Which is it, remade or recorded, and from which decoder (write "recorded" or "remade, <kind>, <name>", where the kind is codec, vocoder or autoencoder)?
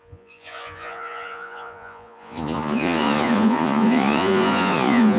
remade, vocoder, Vocos